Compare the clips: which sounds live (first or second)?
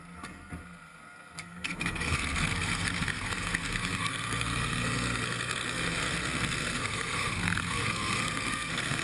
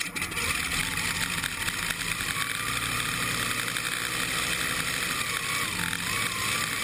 second